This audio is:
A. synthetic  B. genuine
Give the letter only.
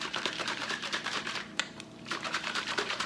A